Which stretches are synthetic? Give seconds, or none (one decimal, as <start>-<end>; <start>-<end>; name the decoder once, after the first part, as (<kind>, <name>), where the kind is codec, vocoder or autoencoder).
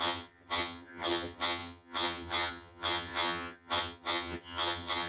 0.0-5.1 (vocoder, HiFi-GAN)